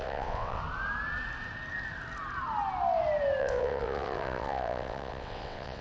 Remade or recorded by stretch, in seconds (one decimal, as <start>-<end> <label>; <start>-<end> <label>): 0.0-0.6 remade; 0.6-3.4 recorded; 3.4-5.8 remade